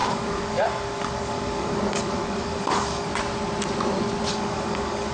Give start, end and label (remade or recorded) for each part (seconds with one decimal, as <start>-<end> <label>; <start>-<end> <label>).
0.0-3.1 remade; 3.1-4.3 recorded; 4.3-5.1 remade